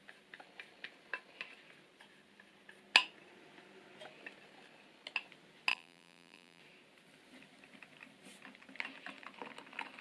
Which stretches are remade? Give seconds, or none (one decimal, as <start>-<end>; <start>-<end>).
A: 5.7-6.6